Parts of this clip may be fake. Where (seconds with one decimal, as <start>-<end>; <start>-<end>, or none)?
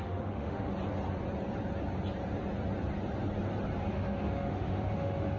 0.0-0.7; 3.9-5.4